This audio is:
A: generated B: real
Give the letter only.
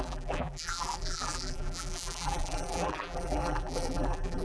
A